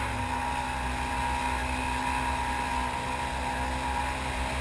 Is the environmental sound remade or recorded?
recorded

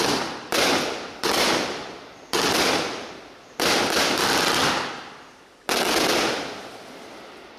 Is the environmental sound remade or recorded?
recorded